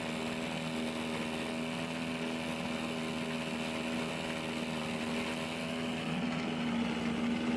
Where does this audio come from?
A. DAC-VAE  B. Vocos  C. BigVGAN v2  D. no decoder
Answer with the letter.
D